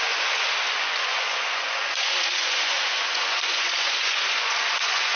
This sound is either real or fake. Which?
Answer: fake